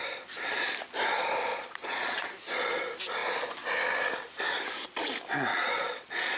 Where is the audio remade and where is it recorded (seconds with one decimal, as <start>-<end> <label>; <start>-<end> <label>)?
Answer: 0.0-1.5 recorded; 1.5-2.8 remade; 2.8-5.5 recorded; 5.5-6.4 remade